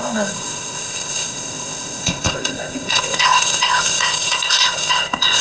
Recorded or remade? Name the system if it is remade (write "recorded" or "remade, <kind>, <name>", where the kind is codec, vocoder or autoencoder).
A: remade, codec, ZipCodec